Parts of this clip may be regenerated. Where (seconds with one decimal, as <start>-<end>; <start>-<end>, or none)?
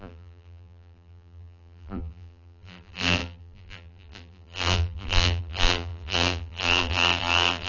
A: 0.0-7.7